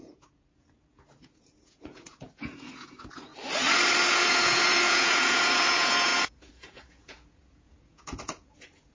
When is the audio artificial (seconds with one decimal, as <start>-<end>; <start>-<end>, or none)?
0.0-3.3; 4.1-8.9